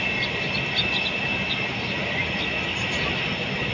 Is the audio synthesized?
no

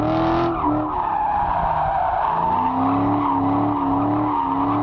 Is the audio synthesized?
no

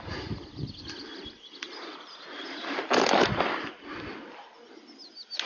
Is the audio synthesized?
no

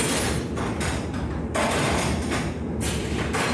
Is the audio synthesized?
yes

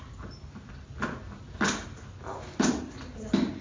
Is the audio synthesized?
no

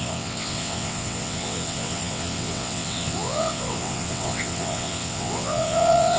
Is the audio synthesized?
yes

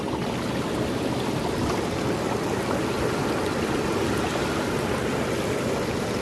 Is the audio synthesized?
no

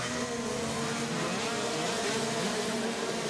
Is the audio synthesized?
no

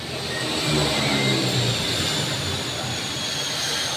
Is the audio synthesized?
no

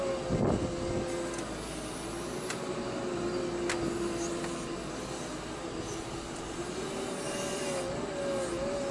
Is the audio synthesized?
no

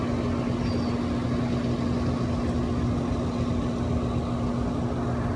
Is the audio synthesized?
no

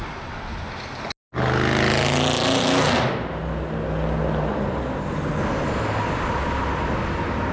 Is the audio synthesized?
no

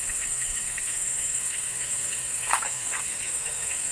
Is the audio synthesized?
yes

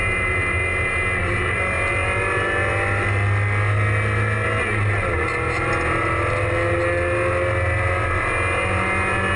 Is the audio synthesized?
no